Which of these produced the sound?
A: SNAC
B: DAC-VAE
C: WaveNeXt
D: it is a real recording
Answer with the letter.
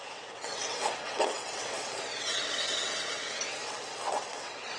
C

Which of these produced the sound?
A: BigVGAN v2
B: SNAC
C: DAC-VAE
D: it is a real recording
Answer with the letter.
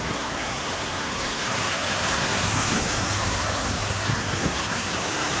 B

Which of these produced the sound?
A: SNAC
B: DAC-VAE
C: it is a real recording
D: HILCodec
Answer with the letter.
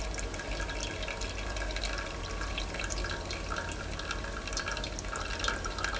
C